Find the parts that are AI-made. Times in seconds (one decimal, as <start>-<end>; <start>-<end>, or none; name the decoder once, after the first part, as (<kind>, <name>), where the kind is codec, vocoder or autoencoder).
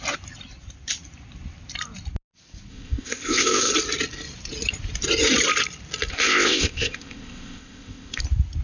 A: 2.7-3.7 (codec, ZipCodec); 6.1-8.2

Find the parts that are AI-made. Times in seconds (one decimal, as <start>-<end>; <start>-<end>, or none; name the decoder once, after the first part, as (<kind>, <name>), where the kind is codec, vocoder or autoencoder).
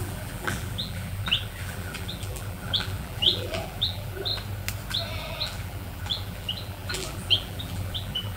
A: 0.0-4.3 (vocoder, BigVGAN v2); 5.1-8.4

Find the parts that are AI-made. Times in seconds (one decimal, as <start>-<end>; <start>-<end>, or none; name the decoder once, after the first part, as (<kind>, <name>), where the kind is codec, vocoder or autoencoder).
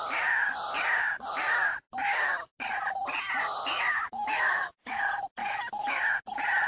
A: 3.7-5.0 (autoencoder, DAC-VAE); 5.4-5.9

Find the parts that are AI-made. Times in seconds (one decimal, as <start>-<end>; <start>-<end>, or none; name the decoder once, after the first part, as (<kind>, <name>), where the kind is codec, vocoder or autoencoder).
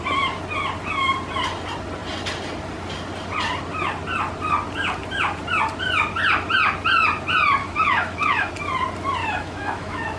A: 7.6-8.5 (autoencoder, DAC-VAE); 9.2-10.2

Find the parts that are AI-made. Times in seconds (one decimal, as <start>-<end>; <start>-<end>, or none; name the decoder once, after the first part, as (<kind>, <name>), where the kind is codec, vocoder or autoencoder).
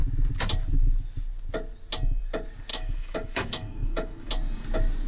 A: 2.7-4.3 (autoencoder, DAC-VAE)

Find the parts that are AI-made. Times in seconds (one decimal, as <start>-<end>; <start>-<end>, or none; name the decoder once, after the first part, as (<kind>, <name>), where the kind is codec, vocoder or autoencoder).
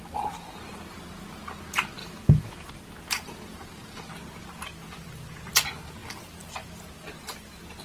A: 2.0-2.7 (autoencoder, DAC-VAE)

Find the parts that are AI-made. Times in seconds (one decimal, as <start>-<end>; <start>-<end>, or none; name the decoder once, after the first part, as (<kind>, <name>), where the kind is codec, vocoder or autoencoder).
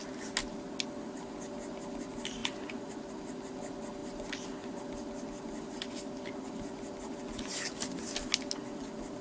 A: none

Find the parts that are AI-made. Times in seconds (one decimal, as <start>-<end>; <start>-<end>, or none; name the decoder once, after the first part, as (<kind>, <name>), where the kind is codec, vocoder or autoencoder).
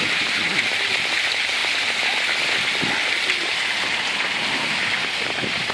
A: none